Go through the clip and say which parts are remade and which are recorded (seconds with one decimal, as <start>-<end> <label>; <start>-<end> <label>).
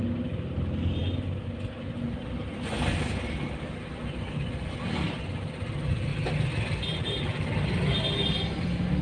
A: 0.0-9.0 recorded